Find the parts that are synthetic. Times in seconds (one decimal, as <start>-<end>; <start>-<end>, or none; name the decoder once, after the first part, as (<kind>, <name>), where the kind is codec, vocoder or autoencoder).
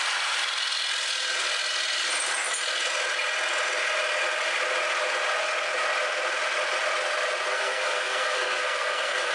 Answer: 7.5-9.3 (codec, SNAC)